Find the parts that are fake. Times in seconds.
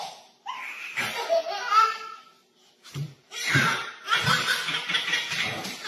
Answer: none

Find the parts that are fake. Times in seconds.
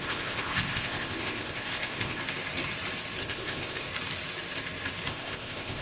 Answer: 0.0-2.2 (codec, ZipCodec); 3.2-3.9; 5.1-5.8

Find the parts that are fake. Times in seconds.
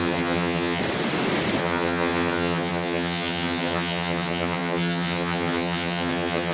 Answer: 0.0-0.8 (vocoder, HiFi-GAN); 1.6-6.5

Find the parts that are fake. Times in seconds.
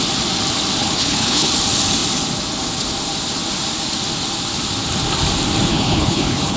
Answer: 0.8-1.5 (codec, HILCodec); 5.7-6.6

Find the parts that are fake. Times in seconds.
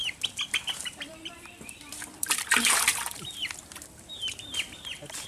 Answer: 1.1-5.3 (vocoder, BigVGAN v2)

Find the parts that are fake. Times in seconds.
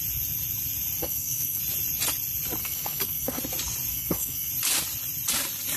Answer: 1.0-1.6 (codec, SNAC); 2.6-3.4; 3.9-4.5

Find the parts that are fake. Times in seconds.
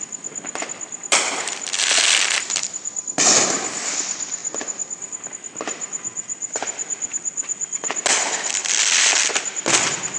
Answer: 4.4-5.3 (vocoder, BigVGAN v2); 8.6-9.3